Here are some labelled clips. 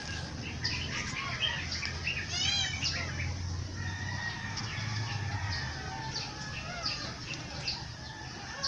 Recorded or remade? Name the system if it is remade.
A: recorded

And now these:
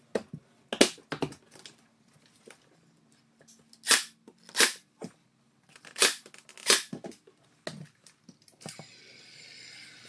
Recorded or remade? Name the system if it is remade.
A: recorded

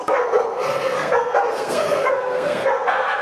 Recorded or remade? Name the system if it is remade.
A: remade, codec, SNAC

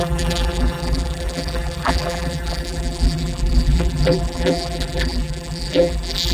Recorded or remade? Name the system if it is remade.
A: remade, vocoder, BigVGAN v2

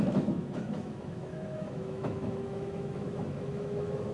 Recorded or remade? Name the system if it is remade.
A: remade, autoencoder, DAC-VAE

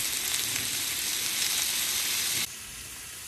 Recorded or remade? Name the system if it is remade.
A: recorded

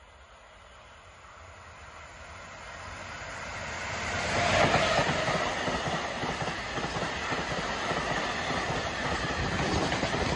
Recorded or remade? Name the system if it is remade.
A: recorded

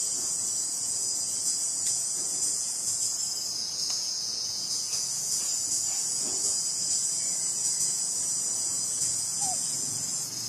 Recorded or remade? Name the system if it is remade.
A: remade, vocoder, Vocos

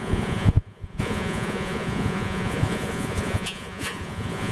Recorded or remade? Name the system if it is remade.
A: remade, vocoder, Vocos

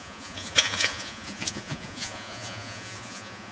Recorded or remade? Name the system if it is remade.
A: remade, vocoder, Vocos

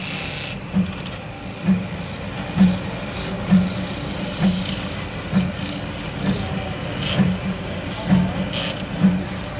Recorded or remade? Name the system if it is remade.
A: recorded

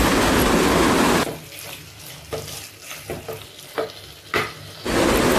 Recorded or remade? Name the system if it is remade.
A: recorded